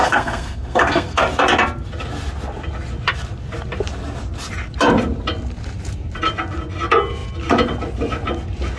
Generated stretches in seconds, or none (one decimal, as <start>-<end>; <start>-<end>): 0.0-1.2